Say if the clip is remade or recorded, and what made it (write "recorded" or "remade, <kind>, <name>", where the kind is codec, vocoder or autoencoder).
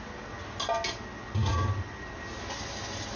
recorded